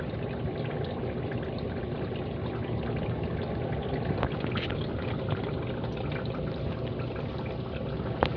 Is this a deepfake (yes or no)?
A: no